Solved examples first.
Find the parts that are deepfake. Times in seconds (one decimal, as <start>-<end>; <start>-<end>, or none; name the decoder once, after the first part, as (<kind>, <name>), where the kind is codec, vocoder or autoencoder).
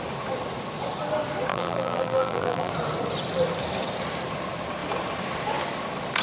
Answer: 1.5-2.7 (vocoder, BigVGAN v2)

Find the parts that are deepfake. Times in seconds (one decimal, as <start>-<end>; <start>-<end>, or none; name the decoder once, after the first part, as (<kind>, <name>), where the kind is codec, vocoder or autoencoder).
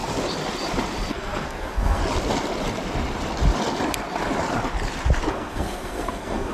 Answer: 1.1-2.0 (codec, SNAC); 5.3-6.5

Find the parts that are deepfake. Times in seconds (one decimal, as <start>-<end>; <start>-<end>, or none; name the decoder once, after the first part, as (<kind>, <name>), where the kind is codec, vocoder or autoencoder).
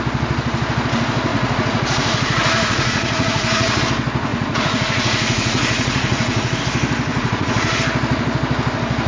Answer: 1.3-3.8 (vocoder, Vocos); 4.3-6.6; 7.1-7.8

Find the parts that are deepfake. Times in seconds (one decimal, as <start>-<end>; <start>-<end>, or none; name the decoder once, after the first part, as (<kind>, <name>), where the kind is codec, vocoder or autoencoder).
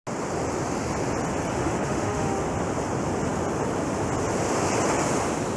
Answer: 1.5-2.4 (autoencoder, DAC-VAE)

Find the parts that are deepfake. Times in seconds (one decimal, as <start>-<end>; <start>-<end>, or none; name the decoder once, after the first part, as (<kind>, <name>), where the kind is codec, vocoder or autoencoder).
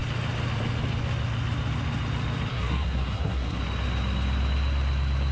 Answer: 2.5-3.6 (codec, SNAC)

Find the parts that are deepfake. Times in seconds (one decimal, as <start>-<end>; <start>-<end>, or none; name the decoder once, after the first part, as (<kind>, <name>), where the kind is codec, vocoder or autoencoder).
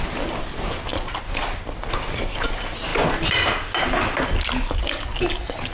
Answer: none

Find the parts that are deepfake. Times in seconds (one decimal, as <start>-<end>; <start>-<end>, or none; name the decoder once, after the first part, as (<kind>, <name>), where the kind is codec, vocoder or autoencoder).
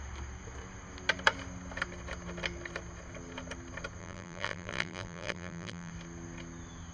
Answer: 4.0-5.9 (vocoder, BigVGAN v2)